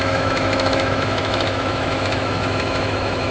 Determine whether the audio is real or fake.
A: fake